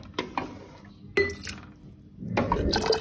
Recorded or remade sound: recorded